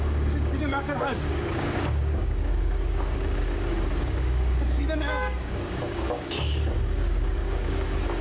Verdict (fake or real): fake